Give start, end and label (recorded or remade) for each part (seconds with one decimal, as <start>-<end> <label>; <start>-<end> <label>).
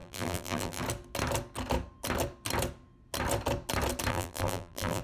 0.0-0.8 remade; 0.8-4.1 recorded; 4.1-5.0 remade